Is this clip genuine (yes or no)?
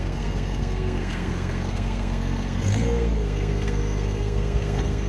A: no